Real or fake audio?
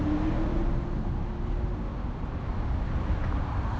real